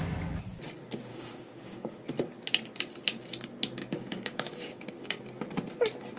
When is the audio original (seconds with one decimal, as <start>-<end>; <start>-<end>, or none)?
0.0-1.1; 1.9-3.8; 5.2-6.2